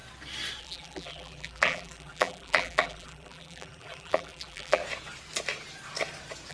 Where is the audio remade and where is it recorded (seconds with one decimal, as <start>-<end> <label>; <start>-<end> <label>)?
0.0-0.6 recorded; 0.6-4.8 remade; 4.8-6.5 recorded